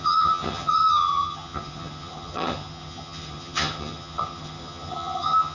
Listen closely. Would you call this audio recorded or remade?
remade